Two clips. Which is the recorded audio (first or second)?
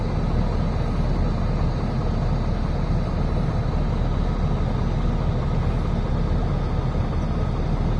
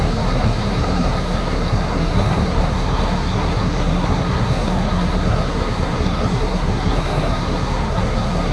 first